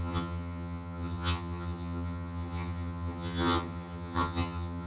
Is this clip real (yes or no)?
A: no